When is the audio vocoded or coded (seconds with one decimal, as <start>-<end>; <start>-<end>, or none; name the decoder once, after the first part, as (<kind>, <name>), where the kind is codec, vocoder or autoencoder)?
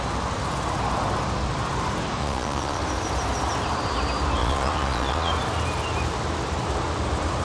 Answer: 2.2-2.8 (vocoder, Vocos); 4.4-5.3